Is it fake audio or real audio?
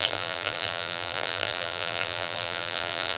fake